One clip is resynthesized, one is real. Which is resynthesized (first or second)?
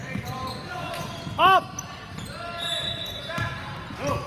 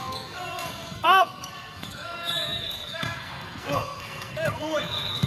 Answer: second